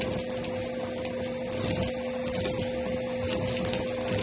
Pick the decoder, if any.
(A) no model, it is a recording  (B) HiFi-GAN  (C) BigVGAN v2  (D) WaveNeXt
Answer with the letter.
A